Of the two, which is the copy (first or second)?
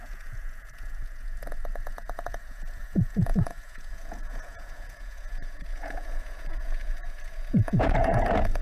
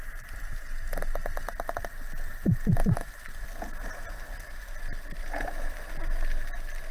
first